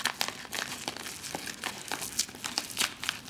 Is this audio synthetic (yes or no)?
no